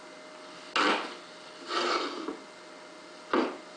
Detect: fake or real real